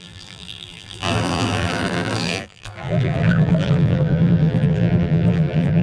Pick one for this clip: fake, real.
fake